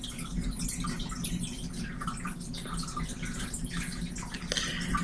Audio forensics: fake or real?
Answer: real